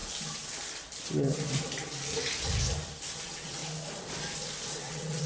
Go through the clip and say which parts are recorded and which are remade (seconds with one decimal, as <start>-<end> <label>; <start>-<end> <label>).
0.0-3.2 recorded; 3.2-3.6 remade; 3.6-4.7 recorded; 4.7-5.3 remade